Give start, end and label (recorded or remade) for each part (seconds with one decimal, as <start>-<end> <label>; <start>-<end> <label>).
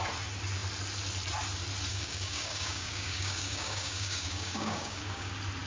0.0-1.9 recorded; 1.9-5.3 remade; 5.3-5.7 recorded